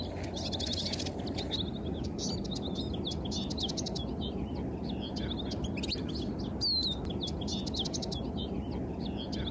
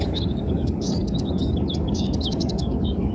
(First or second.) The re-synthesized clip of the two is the second